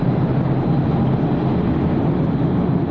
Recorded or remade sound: recorded